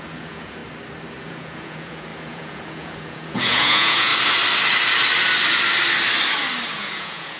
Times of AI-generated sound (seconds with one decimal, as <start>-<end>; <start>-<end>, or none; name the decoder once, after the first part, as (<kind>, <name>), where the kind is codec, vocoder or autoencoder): 0.0-0.6 (vocoder, Vocos); 1.2-4.1; 6.8-7.4